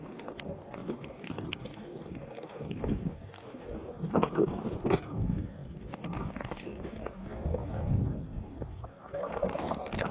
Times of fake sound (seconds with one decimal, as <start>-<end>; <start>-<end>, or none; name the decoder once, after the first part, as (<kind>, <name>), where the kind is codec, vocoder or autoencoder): 0.0-10.1 (codec, DAC)